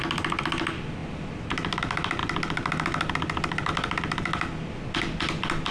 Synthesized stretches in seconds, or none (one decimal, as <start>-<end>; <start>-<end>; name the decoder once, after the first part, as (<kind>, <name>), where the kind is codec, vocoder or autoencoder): none